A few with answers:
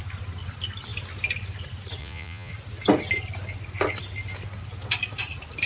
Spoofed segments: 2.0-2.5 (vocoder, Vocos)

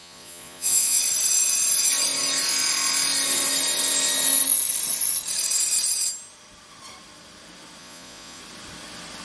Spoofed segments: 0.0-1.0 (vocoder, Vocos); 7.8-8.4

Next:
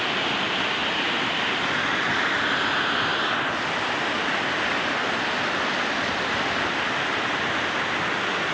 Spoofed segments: none